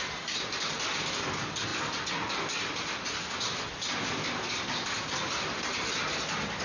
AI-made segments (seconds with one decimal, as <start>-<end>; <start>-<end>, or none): none